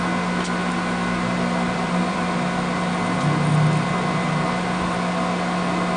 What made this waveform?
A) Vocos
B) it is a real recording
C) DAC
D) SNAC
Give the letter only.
B